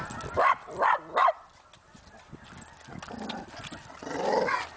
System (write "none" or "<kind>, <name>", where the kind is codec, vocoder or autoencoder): none